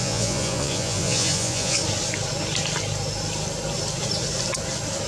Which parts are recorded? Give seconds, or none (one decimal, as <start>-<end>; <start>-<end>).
1.8-5.1